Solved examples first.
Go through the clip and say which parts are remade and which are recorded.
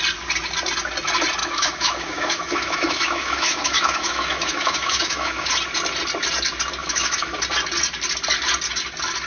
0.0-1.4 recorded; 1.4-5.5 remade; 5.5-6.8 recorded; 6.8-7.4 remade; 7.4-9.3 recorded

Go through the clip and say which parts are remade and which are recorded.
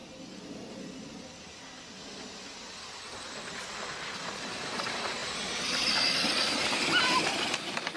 0.0-8.0 recorded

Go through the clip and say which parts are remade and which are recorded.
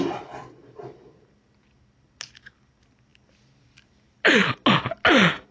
0.0-5.5 recorded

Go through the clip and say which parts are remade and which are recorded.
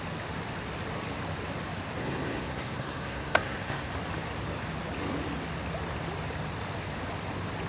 0.0-2.0 recorded; 2.0-3.9 remade; 3.9-7.7 recorded